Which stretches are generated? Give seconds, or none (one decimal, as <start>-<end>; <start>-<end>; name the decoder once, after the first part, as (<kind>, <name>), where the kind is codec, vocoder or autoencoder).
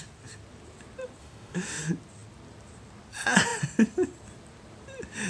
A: 1.2-1.8 (autoencoder, DAC-VAE)